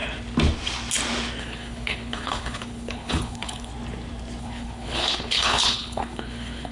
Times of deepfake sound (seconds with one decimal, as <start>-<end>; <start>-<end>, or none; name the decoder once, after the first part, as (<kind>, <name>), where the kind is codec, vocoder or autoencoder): 1.4-3.7 (codec, HILCodec); 4.4-6.7